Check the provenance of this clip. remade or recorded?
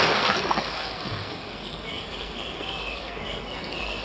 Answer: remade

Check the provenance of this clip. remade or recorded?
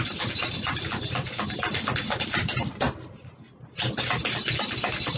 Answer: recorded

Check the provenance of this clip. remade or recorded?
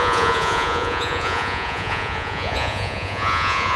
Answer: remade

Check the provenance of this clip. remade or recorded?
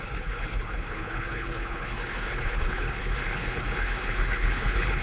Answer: remade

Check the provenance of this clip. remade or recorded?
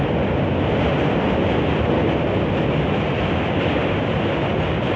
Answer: recorded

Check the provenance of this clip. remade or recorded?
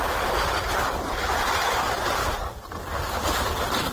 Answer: recorded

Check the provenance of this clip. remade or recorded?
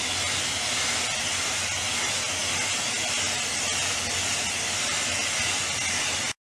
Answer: recorded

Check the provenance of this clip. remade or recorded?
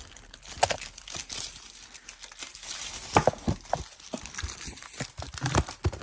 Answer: recorded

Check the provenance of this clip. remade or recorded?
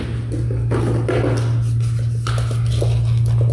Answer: recorded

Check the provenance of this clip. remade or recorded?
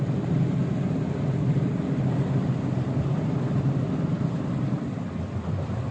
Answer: recorded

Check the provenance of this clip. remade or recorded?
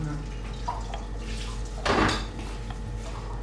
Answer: recorded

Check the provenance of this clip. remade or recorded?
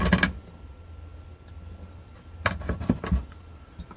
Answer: recorded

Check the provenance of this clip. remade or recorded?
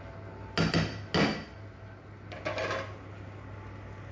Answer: recorded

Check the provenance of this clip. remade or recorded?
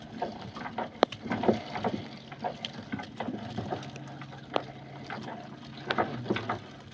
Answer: recorded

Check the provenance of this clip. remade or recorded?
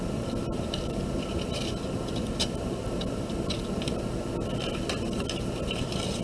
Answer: recorded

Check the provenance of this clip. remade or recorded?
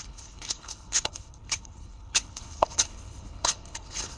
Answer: remade